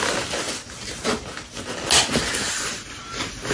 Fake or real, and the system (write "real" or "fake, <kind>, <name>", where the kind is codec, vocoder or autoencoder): real